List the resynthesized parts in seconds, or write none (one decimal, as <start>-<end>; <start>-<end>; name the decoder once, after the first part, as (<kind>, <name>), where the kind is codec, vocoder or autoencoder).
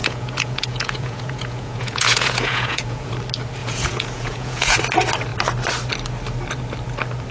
0.0-3.1 (vocoder, Vocos); 3.6-4.8